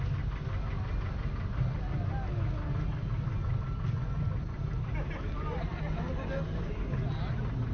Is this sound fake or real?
real